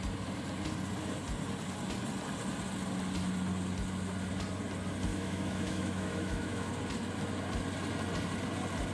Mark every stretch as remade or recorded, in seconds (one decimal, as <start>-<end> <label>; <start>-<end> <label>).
0.0-5.1 recorded; 5.1-6.7 remade; 6.7-8.9 recorded